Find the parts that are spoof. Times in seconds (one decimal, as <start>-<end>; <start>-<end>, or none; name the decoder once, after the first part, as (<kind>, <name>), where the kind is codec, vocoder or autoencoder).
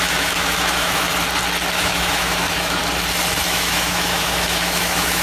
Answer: 0.0-1.1 (autoencoder, DAC-VAE); 1.8-2.8; 3.4-5.2